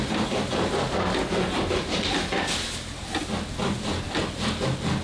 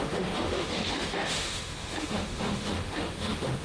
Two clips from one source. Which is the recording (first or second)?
first